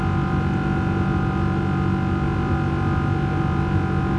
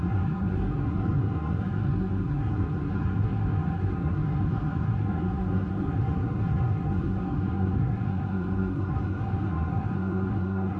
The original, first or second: first